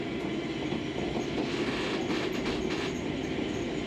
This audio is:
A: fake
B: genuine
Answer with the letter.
B